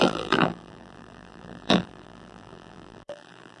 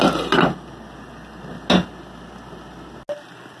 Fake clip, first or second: first